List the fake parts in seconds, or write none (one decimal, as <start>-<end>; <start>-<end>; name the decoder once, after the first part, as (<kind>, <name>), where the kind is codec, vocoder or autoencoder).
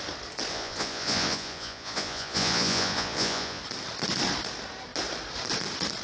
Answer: 0.5-3.6 (vocoder, Vocos)